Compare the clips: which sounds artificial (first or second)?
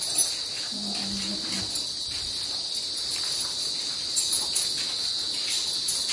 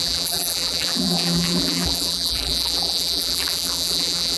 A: second